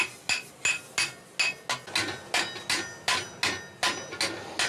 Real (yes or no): yes